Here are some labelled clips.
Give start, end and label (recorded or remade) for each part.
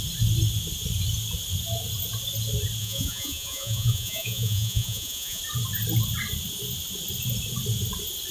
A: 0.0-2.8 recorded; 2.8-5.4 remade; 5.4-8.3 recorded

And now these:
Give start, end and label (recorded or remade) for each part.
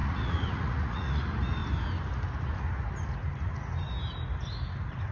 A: 0.0-1.2 remade; 1.2-5.1 recorded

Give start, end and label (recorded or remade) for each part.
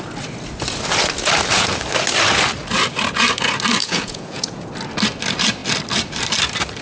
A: 0.0-3.8 recorded; 3.8-4.7 remade; 4.7-6.8 recorded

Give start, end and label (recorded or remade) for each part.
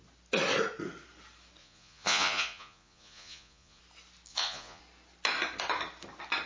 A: 0.0-1.6 recorded; 1.6-3.8 remade; 3.8-4.3 recorded; 4.3-4.8 remade; 4.8-6.5 recorded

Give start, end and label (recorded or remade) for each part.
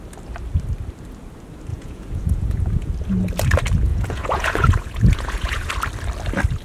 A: 0.0-1.7 recorded; 1.7-2.9 remade; 2.9-3.9 recorded; 3.9-5.7 remade; 5.7-6.6 recorded